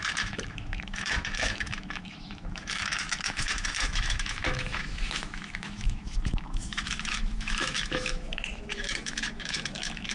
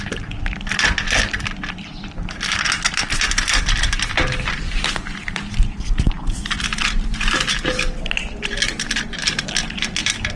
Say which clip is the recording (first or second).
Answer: second